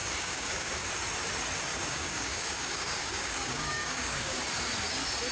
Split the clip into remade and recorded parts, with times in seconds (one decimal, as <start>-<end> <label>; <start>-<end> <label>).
0.0-0.9 remade; 0.9-1.7 recorded; 1.7-4.4 remade; 4.4-5.3 recorded